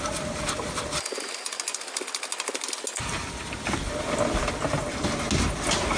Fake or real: real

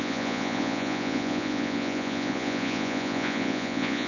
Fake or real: fake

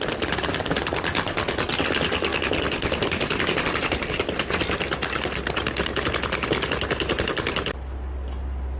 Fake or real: real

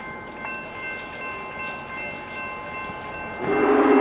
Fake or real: real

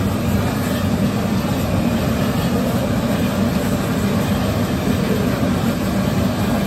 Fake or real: real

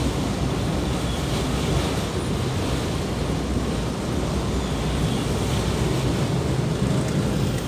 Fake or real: real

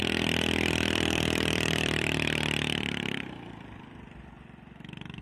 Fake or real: fake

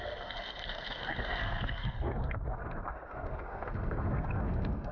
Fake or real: fake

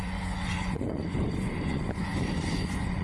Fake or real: fake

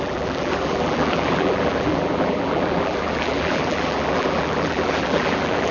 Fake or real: fake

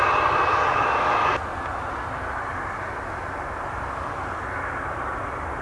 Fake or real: real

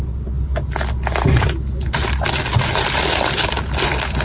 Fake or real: real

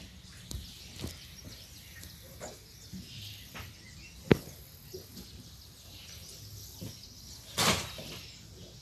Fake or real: real